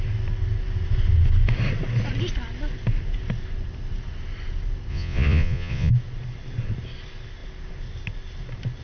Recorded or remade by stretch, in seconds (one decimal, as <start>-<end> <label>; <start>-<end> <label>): 0.0-4.9 recorded; 4.9-5.9 remade; 5.9-8.8 recorded